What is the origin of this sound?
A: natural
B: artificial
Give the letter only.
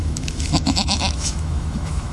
B